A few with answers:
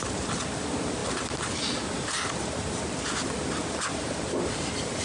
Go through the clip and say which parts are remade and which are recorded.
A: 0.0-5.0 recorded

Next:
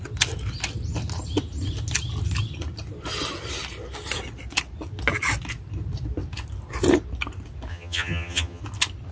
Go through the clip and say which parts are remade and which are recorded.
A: 0.0-7.7 recorded; 7.7-8.6 remade; 8.6-9.1 recorded